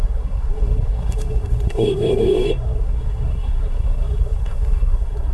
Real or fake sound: fake